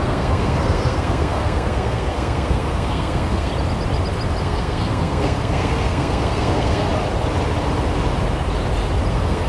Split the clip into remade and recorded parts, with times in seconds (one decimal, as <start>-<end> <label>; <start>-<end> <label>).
0.0-3.5 remade; 3.5-4.4 recorded; 4.4-6.9 remade; 6.9-9.1 recorded; 9.1-9.5 remade